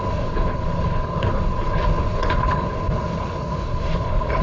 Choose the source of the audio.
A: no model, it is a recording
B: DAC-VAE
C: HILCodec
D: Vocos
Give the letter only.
C